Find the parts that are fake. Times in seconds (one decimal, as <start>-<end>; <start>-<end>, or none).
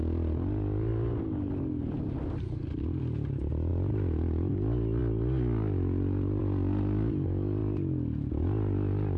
none